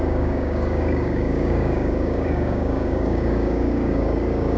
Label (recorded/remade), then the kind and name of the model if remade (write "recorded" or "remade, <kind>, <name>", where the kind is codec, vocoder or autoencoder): remade, codec, DAC